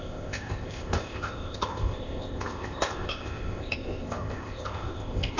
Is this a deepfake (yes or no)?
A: yes